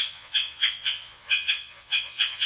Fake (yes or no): yes